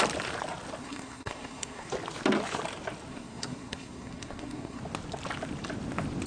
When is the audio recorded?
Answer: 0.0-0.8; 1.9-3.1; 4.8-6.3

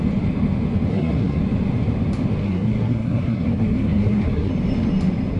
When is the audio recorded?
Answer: 0.0-0.9; 1.4-2.4; 4.5-5.4

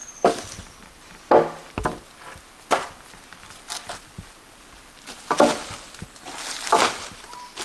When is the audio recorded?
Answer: 0.0-7.6